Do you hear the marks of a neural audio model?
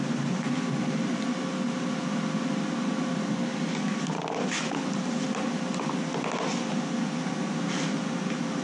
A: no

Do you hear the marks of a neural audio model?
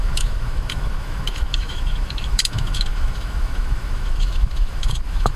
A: yes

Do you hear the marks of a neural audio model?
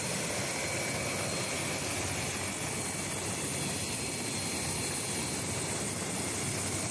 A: no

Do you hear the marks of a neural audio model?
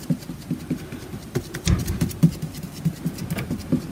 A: no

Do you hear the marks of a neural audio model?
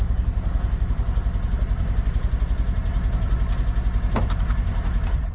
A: no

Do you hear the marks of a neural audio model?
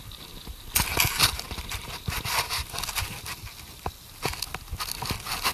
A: no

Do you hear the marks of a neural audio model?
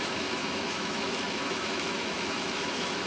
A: yes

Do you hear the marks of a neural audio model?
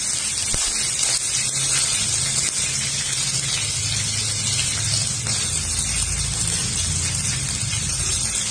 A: no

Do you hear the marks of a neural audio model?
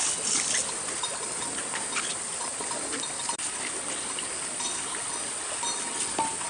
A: no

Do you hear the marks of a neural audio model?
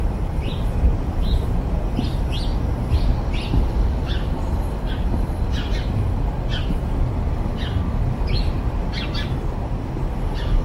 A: no